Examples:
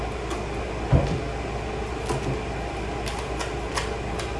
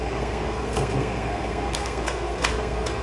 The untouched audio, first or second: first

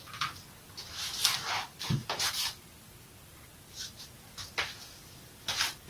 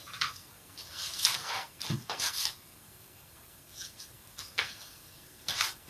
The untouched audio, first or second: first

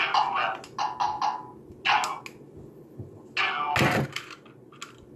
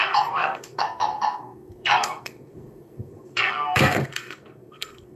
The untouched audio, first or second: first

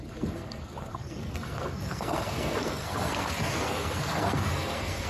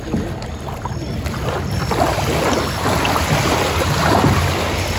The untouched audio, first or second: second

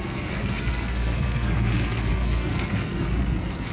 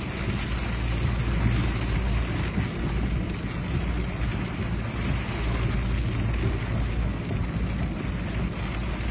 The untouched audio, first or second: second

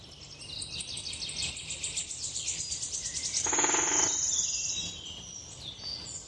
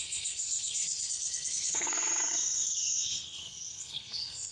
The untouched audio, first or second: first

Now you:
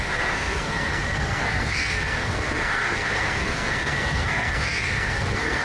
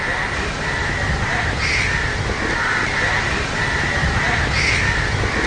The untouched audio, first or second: second